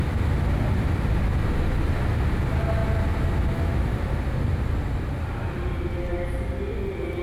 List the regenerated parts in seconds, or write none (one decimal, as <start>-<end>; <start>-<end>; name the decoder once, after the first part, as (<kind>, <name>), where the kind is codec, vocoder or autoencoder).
none